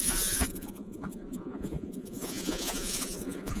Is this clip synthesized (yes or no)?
yes